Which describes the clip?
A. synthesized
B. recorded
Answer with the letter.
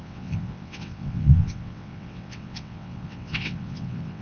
A